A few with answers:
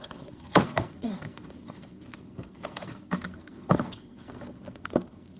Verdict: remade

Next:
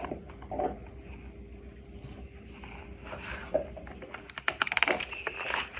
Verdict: recorded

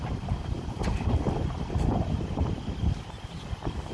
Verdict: recorded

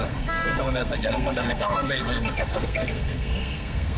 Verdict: remade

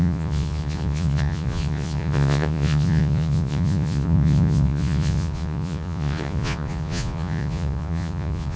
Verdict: remade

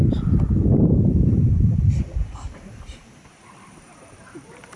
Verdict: remade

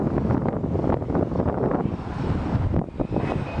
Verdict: recorded